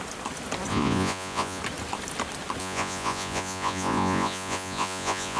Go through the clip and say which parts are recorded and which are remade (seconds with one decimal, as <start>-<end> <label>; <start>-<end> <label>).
0.0-0.7 recorded; 0.7-1.6 remade; 1.6-2.6 recorded; 2.6-5.4 remade